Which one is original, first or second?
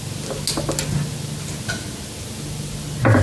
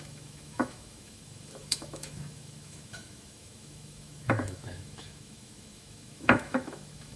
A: first